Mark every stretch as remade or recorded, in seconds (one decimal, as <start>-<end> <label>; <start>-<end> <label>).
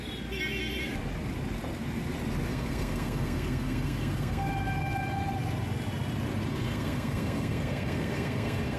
0.0-2.5 recorded; 2.5-4.5 remade; 4.5-6.5 recorded; 6.5-8.8 remade